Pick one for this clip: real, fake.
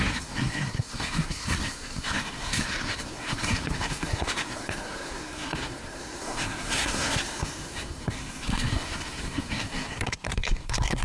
fake